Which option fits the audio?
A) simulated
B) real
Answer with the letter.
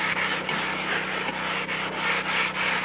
B